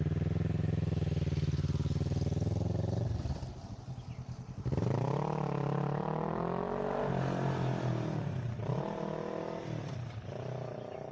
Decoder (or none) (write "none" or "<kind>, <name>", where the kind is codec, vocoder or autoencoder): none